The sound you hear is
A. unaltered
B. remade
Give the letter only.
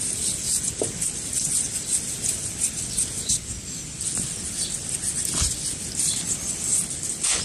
A